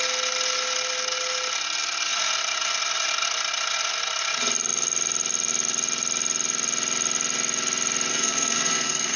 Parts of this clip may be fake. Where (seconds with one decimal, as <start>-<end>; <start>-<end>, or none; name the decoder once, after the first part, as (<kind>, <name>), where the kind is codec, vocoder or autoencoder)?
8.1-9.2 (codec, SNAC)